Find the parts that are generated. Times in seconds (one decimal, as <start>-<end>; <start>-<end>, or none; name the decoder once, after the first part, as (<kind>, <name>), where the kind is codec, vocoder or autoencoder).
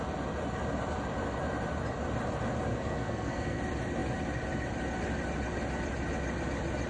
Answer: 2.7-3.6 (codec, SNAC)